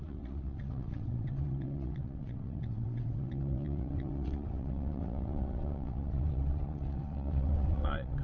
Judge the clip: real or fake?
fake